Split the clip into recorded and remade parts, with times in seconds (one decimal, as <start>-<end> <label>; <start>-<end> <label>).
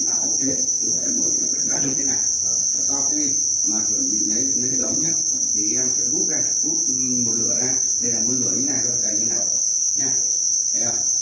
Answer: 0.0-2.0 remade; 2.0-4.7 recorded; 4.7-5.5 remade; 5.5-11.2 recorded